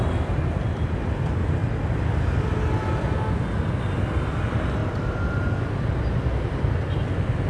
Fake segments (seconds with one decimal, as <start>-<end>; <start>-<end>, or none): none